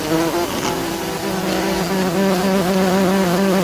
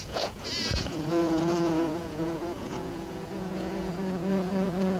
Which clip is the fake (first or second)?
second